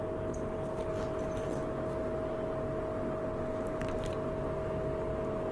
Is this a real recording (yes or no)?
yes